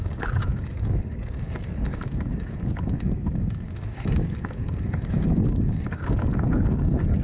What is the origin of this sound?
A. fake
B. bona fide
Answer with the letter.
A